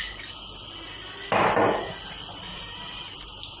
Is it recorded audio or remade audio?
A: recorded